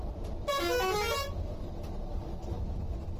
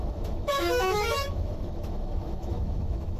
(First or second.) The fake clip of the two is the second